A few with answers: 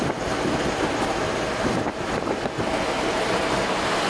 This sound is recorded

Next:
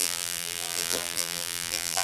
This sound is remade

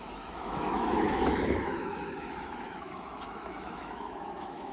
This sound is remade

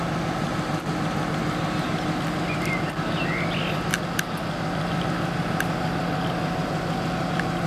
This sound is recorded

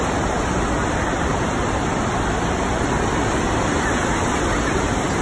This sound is recorded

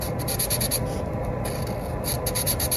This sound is recorded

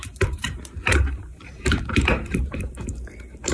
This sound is remade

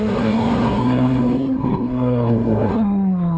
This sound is remade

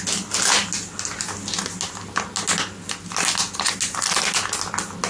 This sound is recorded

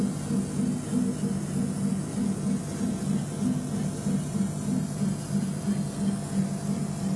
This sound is recorded